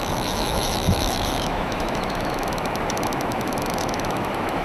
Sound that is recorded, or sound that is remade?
remade